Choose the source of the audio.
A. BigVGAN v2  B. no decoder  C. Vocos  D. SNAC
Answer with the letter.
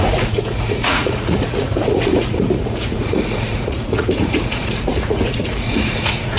C